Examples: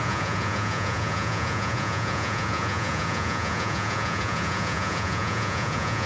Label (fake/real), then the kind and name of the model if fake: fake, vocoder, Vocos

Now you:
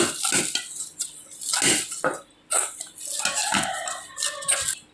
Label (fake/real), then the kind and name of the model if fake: real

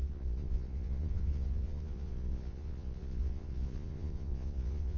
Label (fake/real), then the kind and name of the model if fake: fake, vocoder, Vocos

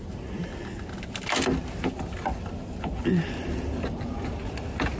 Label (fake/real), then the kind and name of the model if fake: real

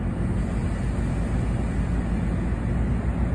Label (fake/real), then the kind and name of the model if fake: real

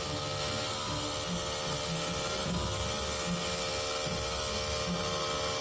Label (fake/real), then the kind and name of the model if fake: real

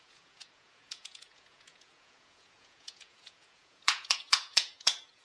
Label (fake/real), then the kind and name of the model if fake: fake, vocoder, Vocos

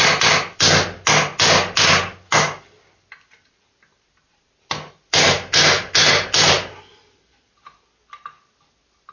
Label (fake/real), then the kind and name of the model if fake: real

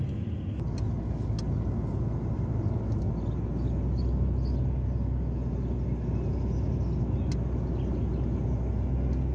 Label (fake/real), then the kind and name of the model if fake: real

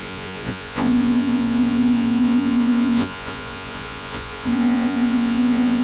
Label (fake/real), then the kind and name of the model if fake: fake, vocoder, Vocos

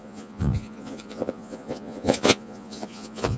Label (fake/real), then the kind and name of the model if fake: fake, vocoder, Vocos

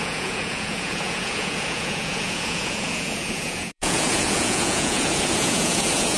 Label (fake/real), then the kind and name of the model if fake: fake, vocoder, Vocos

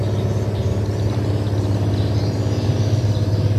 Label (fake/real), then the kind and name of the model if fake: real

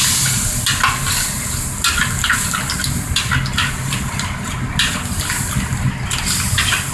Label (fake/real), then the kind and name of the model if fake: real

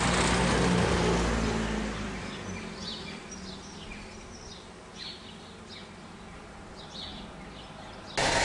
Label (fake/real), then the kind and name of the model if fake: real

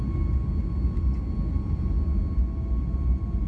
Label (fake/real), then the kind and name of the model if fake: real